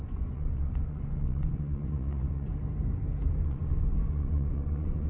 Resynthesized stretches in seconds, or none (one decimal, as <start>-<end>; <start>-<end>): 0.0-2.5; 3.4-5.1